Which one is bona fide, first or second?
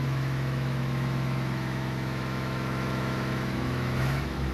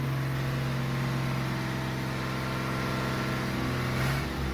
second